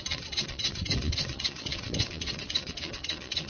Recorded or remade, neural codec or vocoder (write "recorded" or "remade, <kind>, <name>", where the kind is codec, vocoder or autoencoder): remade, vocoder, WaveNeXt